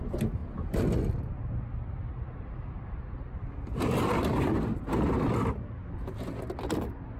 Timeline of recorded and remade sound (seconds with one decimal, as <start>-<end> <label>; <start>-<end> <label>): 0.0-7.2 recorded

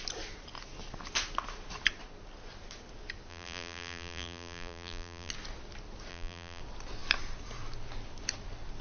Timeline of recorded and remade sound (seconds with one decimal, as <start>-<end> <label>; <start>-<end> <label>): 0.0-3.3 recorded; 3.3-5.3 remade; 5.3-6.1 recorded; 6.1-6.6 remade; 6.6-8.8 recorded

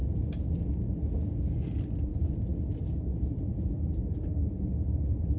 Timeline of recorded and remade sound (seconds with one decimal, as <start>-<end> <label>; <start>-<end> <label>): 0.0-2.1 recorded; 2.1-4.5 remade; 4.5-5.4 recorded